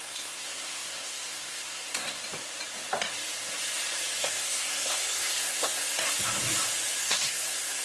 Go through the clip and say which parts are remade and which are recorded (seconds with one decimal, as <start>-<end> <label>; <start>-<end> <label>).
0.0-2.2 remade; 2.2-4.2 recorded; 4.2-5.8 remade; 5.8-7.0 recorded; 7.0-7.8 remade